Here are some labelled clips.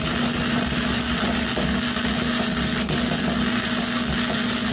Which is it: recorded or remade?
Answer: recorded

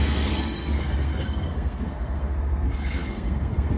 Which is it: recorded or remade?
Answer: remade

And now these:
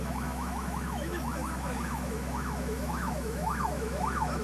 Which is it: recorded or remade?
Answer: remade